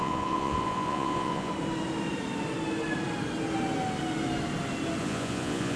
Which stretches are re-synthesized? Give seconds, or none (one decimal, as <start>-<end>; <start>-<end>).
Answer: 0.0-1.5; 5.0-5.8